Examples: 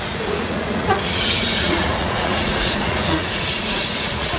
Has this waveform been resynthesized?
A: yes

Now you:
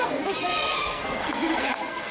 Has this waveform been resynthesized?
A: yes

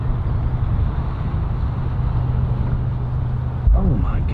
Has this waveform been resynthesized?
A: no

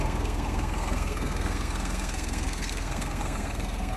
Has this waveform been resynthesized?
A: yes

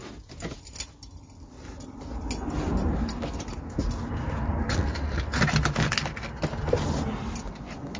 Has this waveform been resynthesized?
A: no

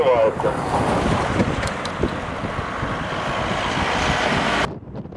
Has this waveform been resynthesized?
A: no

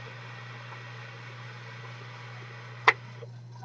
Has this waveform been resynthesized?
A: no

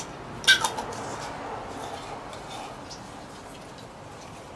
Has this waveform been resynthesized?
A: no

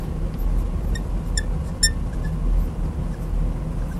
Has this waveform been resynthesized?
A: no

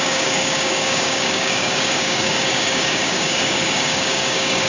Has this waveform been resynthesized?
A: yes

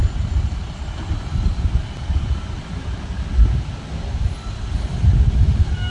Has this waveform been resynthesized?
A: no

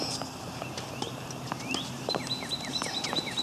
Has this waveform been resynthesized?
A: no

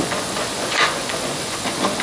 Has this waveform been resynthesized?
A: yes